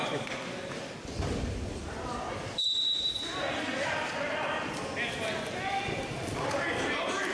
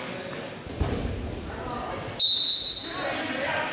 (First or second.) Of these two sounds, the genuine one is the second